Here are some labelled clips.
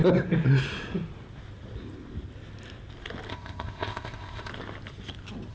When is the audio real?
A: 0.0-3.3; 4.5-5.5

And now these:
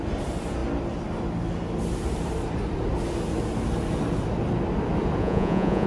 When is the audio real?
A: 0.0-5.2